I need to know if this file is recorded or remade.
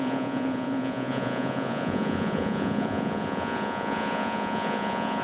remade